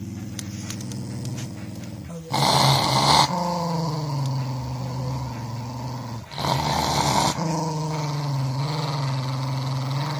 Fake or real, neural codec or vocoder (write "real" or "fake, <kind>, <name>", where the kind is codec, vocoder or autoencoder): real